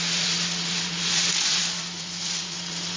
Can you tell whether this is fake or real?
fake